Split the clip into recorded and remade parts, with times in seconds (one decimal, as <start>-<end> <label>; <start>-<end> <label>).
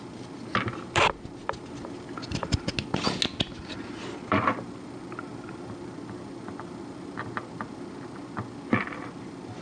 0.0-9.6 recorded